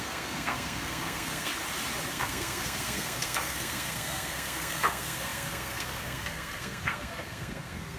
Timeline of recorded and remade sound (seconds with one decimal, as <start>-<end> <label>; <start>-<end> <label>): 0.0-1.5 remade; 1.5-2.1 recorded; 2.1-8.0 remade